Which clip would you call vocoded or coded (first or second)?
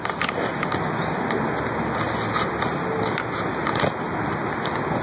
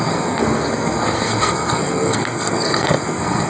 second